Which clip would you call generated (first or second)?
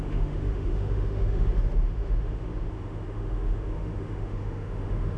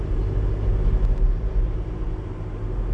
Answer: first